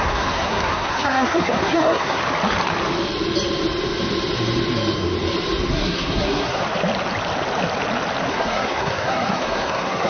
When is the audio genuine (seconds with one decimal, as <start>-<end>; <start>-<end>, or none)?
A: 2.2-5.7; 6.6-8.3